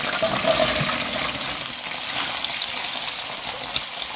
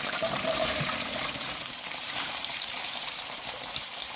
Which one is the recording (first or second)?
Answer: first